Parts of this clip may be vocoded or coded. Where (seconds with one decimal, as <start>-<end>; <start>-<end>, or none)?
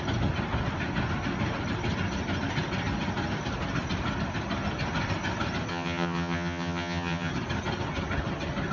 5.7-7.3